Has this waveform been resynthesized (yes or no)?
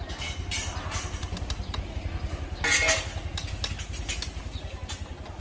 no